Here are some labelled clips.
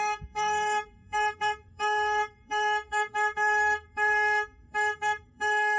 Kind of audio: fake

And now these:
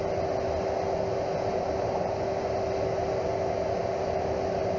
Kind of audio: real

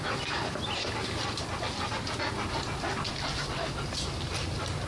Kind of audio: real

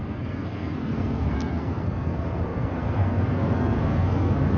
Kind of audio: fake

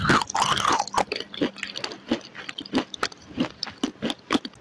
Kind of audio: real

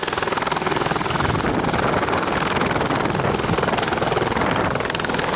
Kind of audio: real